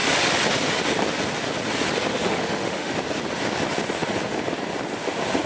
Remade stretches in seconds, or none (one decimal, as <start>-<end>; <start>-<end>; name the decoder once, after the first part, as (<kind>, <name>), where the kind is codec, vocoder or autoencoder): 2.1-2.9 (autoencoder, DAC-VAE)